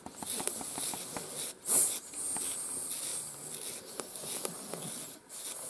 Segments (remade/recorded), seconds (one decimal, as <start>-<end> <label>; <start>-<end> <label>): 0.0-5.7 recorded